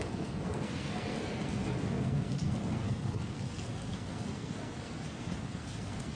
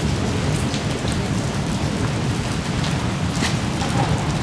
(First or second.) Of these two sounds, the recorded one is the second